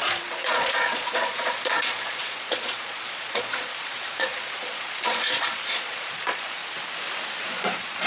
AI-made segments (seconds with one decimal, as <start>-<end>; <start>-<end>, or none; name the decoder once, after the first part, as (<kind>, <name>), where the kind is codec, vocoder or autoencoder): 0.0-6.6 (vocoder, Vocos); 7.4-8.1